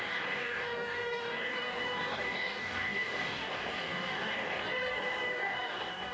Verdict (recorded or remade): remade